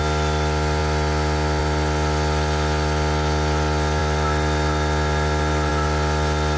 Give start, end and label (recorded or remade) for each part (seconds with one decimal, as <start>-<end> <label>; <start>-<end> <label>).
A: 0.0-6.6 recorded